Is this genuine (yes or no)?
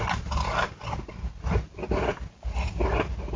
yes